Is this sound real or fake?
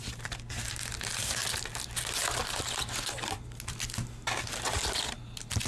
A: real